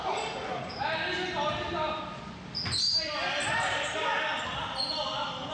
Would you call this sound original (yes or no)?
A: yes